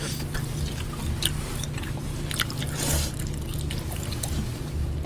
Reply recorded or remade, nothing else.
recorded